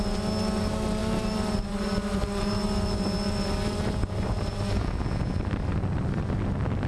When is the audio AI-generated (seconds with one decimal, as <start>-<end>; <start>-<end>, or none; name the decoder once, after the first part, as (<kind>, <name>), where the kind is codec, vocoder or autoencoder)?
1.0-4.8 (vocoder, BigVGAN v2)